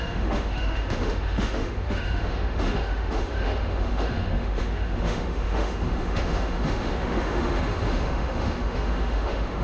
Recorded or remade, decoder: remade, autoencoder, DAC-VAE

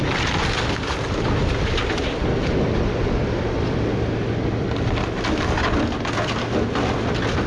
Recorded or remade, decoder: recorded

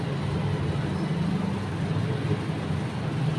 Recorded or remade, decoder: recorded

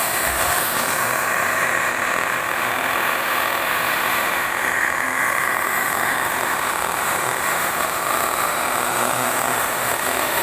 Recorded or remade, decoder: remade, autoencoder, DAC-VAE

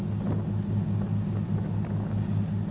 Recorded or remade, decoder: recorded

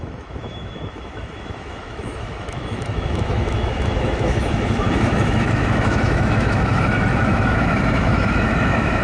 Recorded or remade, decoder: remade, autoencoder, DAC-VAE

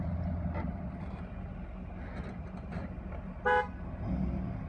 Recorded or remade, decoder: recorded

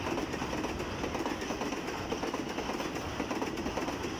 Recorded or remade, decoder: recorded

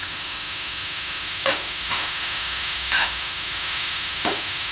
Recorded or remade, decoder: remade, autoencoder, DAC-VAE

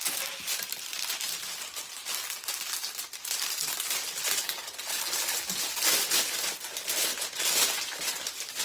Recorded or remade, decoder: recorded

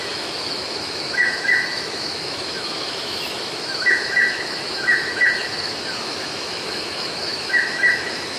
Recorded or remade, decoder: remade, autoencoder, DAC-VAE